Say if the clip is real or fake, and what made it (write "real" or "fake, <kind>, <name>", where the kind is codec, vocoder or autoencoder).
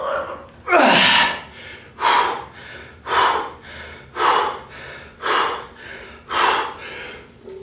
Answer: real